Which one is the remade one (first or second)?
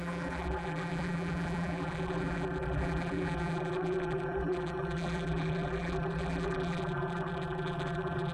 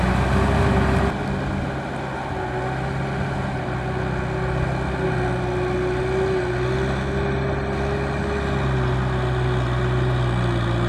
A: first